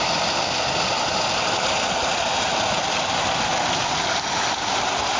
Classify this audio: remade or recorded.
recorded